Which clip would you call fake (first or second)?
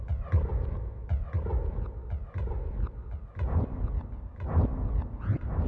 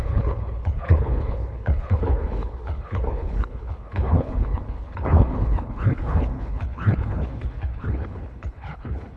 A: second